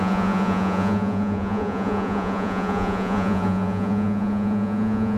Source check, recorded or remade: remade